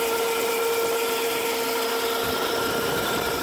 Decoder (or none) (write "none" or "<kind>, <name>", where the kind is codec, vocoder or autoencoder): none